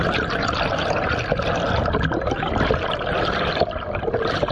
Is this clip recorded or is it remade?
recorded